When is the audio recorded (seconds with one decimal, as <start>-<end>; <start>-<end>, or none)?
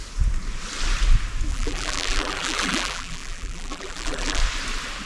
0.0-1.5; 4.4-5.1